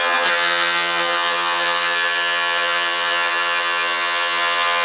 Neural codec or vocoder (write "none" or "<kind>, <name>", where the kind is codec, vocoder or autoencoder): vocoder, HiFi-GAN